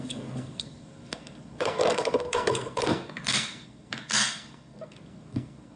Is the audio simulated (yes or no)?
yes